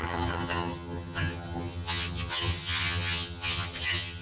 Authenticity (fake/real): fake